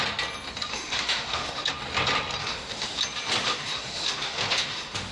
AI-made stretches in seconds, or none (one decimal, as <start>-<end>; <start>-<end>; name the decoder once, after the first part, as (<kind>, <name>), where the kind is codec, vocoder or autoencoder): 0.7-1.7 (autoencoder, DAC-VAE); 2.4-3.0; 3.5-5.1